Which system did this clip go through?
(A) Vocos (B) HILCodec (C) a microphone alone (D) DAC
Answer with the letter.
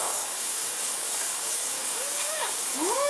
D